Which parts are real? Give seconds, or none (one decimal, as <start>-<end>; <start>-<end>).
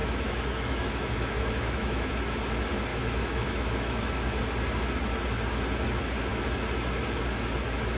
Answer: 2.1-2.9; 4.4-8.0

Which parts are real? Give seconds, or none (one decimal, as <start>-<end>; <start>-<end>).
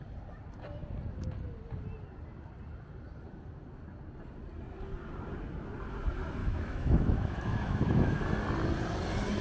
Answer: 0.0-6.4; 8.2-9.4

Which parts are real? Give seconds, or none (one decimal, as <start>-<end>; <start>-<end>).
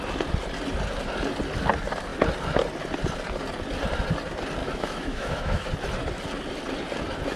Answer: 0.0-4.6; 5.7-7.4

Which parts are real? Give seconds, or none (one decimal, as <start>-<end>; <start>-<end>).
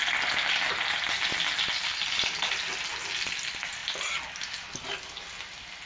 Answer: 0.0-5.9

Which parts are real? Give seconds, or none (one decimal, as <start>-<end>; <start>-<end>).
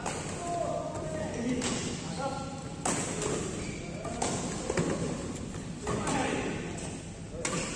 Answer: 0.0-7.8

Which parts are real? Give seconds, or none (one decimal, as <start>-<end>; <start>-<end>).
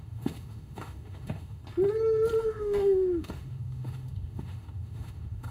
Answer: 1.6-2.4